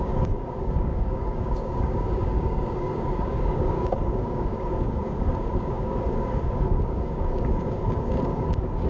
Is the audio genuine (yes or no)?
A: no